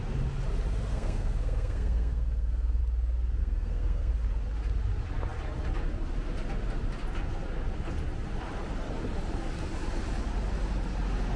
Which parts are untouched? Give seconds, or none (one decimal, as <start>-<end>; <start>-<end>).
0.0-0.9; 2.8-3.4; 4.1-11.4